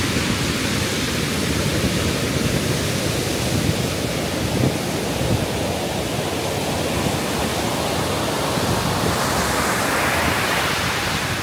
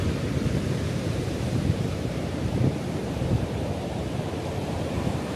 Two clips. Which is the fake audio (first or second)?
second